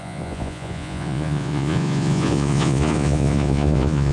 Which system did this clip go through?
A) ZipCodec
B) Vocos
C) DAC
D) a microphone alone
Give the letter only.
B